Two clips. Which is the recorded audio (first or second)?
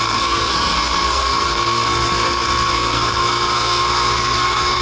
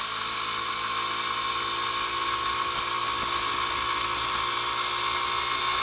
second